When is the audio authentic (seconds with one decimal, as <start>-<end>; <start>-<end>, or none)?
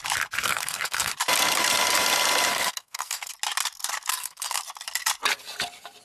0.0-0.4; 1.1-2.5; 3.3-4.1; 4.6-6.0